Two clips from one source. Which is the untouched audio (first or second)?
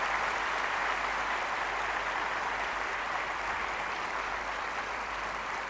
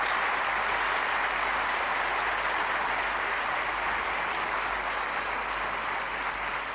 second